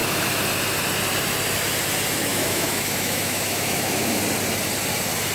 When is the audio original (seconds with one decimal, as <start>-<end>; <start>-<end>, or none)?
0.0-2.3; 4.2-5.3

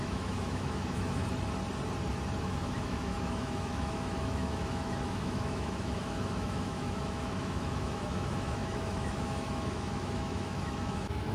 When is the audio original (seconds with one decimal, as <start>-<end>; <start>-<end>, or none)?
1.2-2.4